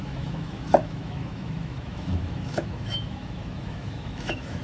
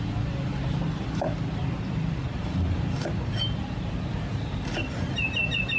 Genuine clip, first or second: second